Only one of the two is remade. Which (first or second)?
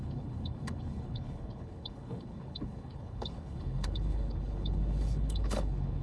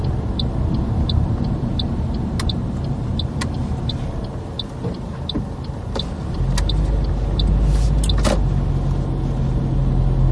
first